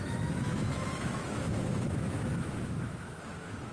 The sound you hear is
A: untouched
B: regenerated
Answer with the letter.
B